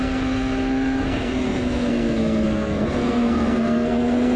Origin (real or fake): fake